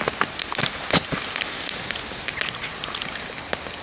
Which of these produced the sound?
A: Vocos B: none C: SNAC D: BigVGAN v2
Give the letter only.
B